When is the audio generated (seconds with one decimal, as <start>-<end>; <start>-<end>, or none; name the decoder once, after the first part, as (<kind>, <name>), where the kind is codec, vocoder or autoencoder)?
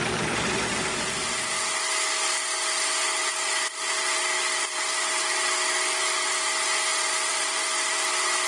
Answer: 3.2-5.6 (vocoder, BigVGAN v2); 6.9-8.5